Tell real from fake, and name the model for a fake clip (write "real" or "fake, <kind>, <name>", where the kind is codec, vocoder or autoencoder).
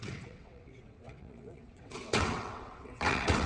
fake, vocoder, WaveNeXt